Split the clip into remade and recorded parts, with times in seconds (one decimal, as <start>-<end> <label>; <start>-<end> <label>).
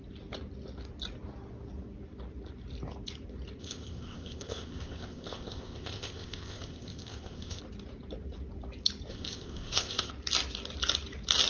0.0-3.6 recorded; 3.6-7.6 remade; 7.6-9.1 recorded; 9.1-10.1 remade; 10.1-11.5 recorded